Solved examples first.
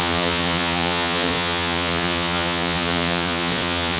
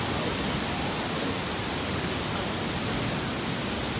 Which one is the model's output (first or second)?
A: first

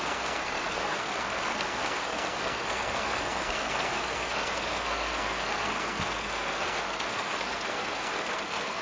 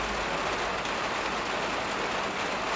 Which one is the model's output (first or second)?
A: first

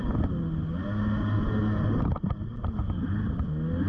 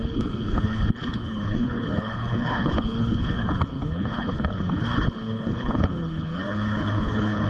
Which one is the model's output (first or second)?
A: second